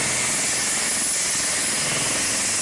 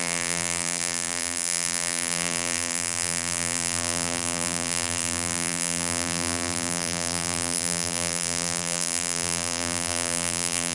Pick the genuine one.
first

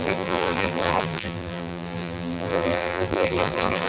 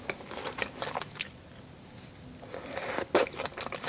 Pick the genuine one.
second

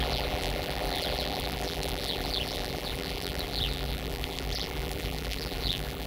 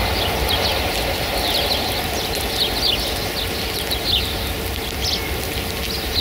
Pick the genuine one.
second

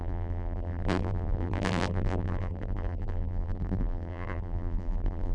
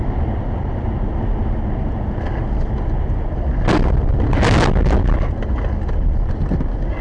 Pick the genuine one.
second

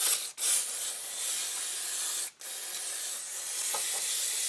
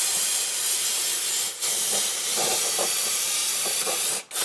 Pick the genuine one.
first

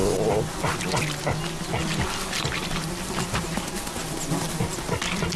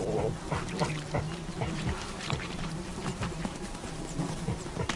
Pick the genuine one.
first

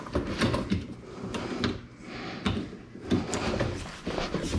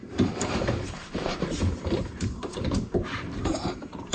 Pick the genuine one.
first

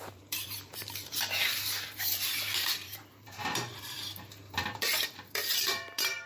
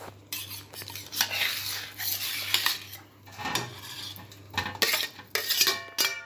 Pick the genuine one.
second